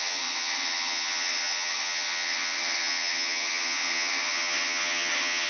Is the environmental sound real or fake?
fake